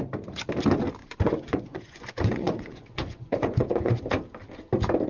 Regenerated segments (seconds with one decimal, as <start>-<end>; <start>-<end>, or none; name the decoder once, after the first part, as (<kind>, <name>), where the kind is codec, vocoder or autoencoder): 1.0-4.0 (vocoder, Vocos)